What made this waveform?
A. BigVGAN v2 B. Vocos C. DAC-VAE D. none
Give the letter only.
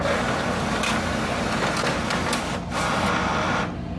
D